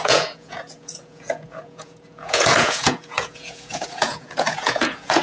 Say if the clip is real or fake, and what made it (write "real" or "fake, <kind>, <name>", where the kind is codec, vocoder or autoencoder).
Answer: fake, vocoder, Vocos